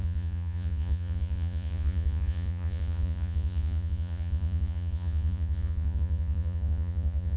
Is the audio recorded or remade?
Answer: remade